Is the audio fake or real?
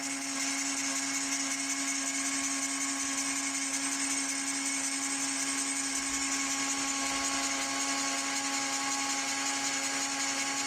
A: real